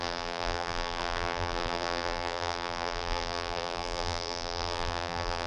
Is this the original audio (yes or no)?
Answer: no